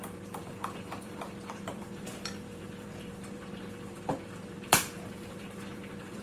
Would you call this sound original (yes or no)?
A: no